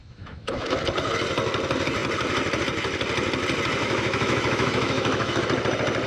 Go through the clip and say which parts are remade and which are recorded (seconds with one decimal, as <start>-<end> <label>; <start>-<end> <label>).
0.0-0.8 remade; 0.8-3.8 recorded; 3.8-5.4 remade; 5.4-6.1 recorded